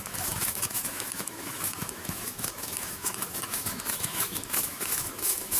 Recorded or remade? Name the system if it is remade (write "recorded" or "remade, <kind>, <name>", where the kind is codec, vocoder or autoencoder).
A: remade, autoencoder, DAC-VAE